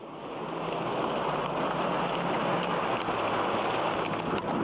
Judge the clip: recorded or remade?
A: recorded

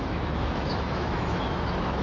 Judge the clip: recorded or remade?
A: remade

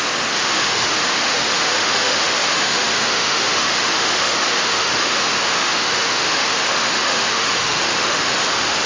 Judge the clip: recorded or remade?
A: remade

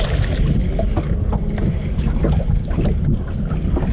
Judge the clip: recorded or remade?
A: recorded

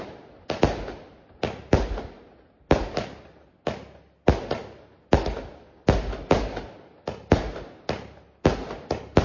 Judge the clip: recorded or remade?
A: recorded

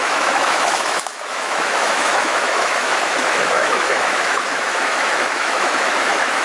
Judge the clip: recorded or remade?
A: remade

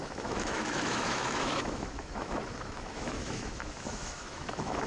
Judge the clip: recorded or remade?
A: remade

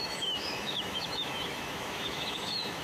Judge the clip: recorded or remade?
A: remade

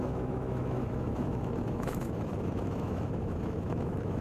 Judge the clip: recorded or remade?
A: remade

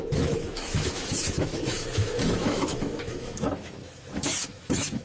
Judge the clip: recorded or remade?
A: remade